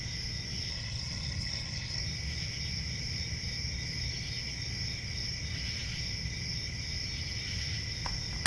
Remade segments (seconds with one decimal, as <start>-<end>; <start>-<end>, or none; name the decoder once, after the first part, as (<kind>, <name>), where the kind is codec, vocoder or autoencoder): 0.7-2.0 (codec, HILCodec)